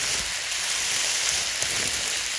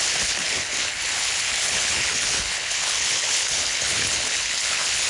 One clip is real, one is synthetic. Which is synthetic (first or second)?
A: second